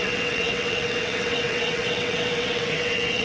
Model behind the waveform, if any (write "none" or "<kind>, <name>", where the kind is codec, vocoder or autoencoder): vocoder, WaveNeXt